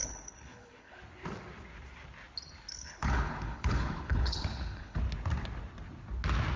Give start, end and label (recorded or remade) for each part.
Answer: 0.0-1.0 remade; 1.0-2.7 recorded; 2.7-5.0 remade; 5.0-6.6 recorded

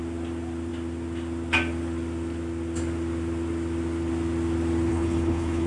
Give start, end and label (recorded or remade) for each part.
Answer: 0.0-4.9 recorded; 4.9-5.7 remade

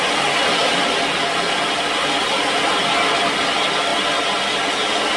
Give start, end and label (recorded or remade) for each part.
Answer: 0.0-5.2 recorded

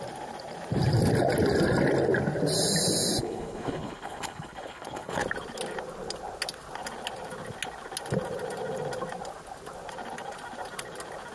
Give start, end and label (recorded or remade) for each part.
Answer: 0.0-3.2 recorded; 3.2-5.2 remade; 5.2-11.3 recorded

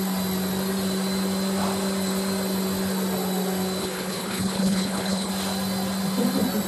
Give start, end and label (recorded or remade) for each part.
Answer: 0.0-3.8 recorded; 3.8-5.3 remade; 5.3-6.7 recorded

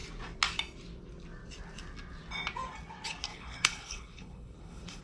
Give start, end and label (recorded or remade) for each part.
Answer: 0.0-3.3 recorded; 3.3-5.0 remade

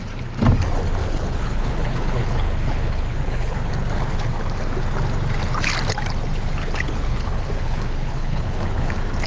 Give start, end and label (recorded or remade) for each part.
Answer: 0.0-1.0 recorded; 1.0-3.7 remade; 3.7-6.6 recorded; 6.6-8.9 remade; 8.9-9.3 recorded